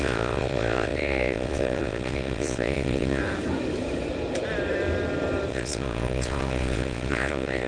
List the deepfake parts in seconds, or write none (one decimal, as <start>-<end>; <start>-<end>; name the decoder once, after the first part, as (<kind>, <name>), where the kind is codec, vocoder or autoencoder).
0.0-3.2 (vocoder, Vocos); 5.5-7.7